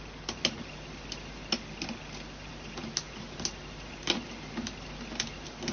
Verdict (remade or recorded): recorded